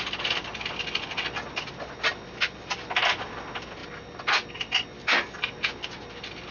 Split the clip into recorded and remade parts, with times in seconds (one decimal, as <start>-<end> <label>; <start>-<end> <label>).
0.0-6.5 recorded